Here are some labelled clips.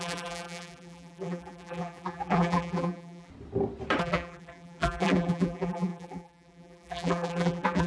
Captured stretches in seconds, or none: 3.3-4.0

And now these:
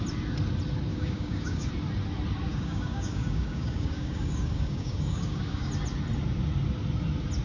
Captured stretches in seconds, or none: 0.0-0.9; 1.7-2.5; 5.7-7.4

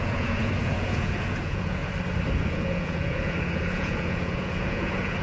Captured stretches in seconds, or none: 1.8-2.5

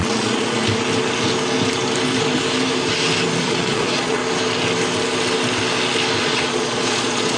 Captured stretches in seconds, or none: 0.6-3.4; 4.2-6.2